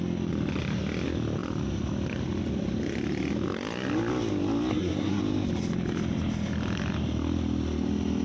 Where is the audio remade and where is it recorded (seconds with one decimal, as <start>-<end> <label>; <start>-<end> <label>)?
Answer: 0.0-4.7 recorded; 4.7-5.2 remade; 5.2-8.2 recorded